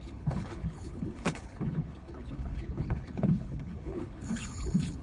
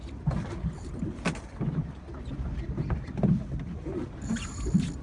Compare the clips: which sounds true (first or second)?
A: second